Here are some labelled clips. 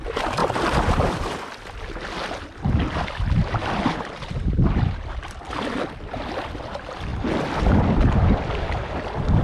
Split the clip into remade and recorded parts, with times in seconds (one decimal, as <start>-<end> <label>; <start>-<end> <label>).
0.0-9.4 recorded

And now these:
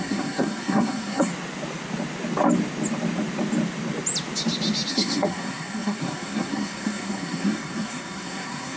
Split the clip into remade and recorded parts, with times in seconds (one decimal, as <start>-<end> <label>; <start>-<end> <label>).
0.0-1.3 remade; 1.3-4.9 recorded; 4.9-8.8 remade

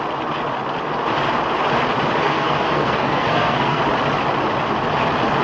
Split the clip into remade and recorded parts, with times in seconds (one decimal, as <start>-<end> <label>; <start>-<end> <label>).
0.0-2.2 recorded; 2.2-3.8 remade; 3.8-5.4 recorded